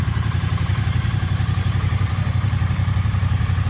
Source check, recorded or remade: remade